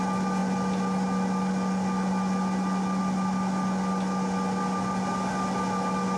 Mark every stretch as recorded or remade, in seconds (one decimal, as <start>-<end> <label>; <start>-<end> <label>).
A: 0.0-6.2 recorded